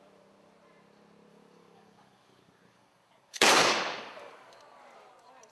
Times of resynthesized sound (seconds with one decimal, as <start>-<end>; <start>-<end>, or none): 1.3-4.6